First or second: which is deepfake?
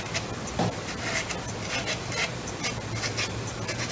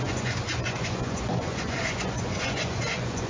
second